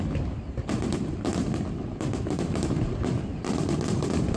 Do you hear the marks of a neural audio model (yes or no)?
no